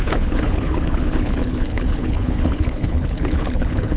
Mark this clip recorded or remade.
remade